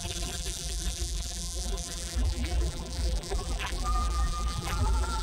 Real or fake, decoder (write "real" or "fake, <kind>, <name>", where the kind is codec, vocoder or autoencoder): fake, vocoder, BigVGAN v2